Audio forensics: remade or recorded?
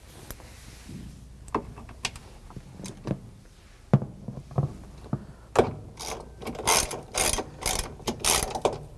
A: recorded